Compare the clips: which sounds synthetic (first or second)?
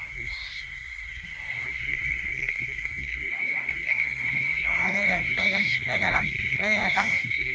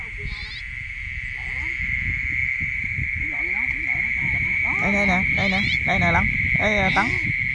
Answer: first